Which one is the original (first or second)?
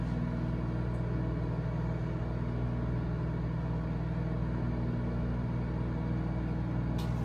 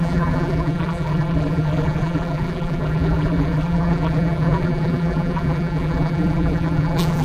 first